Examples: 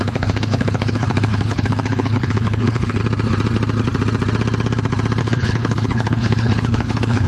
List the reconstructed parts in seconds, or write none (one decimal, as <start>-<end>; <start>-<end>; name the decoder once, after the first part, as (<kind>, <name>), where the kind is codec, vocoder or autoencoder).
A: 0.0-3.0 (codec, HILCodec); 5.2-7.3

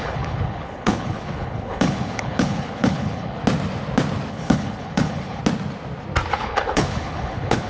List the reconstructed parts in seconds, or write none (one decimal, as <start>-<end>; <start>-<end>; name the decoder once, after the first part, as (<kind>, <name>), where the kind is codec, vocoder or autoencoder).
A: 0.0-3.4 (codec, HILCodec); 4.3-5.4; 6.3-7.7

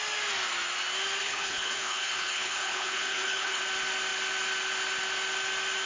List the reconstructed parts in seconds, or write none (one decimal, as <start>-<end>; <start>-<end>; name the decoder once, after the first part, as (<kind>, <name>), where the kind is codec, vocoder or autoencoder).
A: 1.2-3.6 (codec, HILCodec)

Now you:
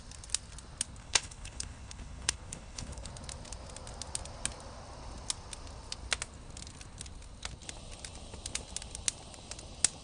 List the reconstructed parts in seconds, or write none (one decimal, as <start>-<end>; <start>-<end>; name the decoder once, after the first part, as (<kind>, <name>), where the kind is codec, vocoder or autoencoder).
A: 1.0-3.1 (codec, HILCodec)

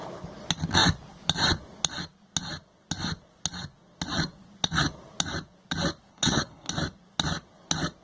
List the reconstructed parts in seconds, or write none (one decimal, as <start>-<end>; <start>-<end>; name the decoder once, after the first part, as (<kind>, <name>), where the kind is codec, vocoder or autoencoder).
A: 6.1-6.7 (codec, HILCodec)

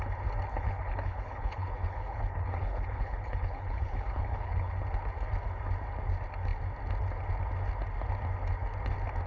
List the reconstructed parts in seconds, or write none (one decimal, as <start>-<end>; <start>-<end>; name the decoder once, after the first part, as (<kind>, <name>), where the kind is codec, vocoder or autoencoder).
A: 0.5-4.8 (codec, HILCodec)

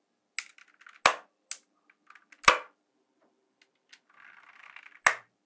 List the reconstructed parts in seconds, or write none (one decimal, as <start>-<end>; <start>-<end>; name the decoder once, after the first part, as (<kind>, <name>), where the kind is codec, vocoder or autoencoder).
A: none